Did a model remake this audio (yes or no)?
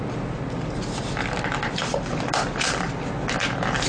no